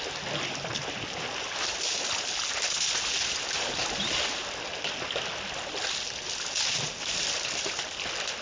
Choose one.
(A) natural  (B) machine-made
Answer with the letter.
A